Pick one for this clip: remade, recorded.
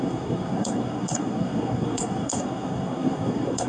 remade